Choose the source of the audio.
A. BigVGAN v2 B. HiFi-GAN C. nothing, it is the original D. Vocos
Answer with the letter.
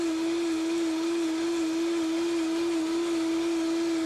C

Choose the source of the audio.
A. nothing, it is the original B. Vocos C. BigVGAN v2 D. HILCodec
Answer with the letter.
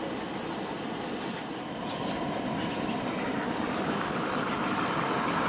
A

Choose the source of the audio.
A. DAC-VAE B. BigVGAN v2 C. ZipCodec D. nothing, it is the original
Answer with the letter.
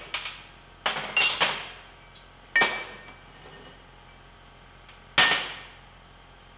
D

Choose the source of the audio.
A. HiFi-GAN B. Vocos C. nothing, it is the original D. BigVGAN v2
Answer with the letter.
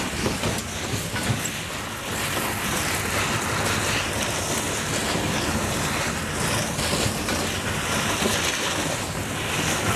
C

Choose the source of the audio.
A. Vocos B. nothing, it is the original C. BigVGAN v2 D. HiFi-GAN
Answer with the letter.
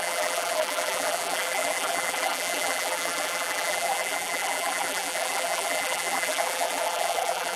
C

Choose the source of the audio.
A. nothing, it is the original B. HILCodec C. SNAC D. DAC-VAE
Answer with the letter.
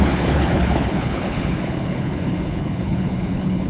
B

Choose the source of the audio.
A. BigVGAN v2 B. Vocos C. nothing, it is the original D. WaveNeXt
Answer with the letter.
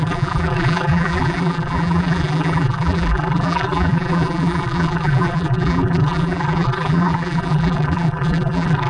A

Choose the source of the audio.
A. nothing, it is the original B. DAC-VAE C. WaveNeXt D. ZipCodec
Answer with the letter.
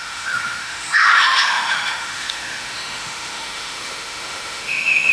B